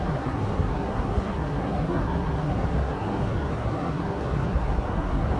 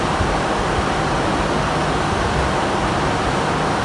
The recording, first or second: second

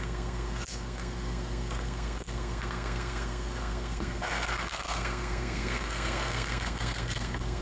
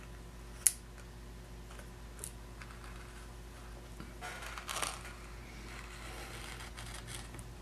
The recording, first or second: second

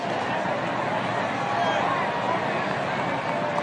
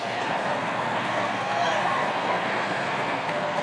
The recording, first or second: first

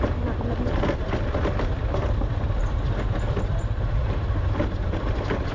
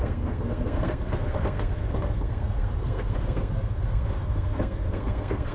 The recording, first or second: first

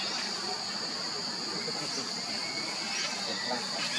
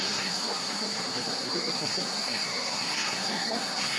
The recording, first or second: first